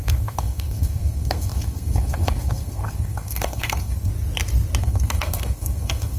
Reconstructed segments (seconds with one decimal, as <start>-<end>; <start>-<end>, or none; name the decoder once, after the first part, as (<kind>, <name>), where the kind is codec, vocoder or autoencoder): 0.0-4.1 (codec, SNAC); 4.8-6.2

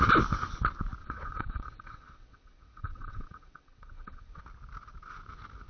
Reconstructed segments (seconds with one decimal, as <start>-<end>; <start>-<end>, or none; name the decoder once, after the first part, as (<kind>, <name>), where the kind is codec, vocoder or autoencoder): 1.0-4.4 (vocoder, WaveNeXt)

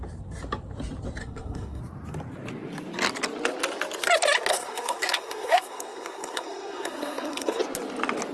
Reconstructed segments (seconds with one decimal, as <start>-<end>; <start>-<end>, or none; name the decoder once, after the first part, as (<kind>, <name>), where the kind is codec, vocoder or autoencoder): 1.2-1.8 (codec, SNAC); 4.5-7.6